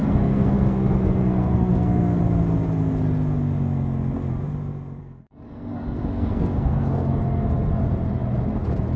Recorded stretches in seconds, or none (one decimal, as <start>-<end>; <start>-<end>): 2.2-5.0; 7.8-9.0

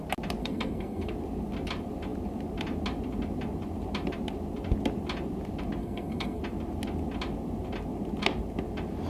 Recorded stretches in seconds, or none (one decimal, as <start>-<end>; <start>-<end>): 0.0-0.4; 1.1-5.8; 6.4-9.1

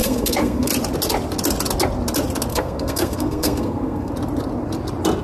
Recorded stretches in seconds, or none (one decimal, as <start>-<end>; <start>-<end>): 0.7-2.5; 4.1-5.2

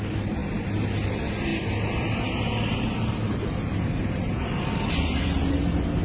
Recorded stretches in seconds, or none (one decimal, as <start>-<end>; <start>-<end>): 0.0-6.0

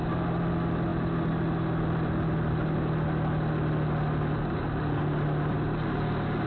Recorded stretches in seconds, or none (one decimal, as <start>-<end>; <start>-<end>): 0.0-6.5